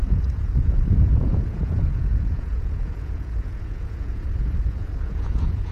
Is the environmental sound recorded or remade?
remade